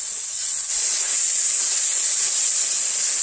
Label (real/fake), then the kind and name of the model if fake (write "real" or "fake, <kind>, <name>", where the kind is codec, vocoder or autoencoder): fake, vocoder, Vocos